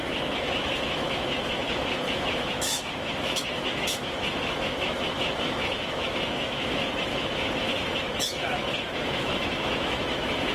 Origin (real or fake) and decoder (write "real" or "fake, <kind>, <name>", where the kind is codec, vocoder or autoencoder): fake, autoencoder, DAC-VAE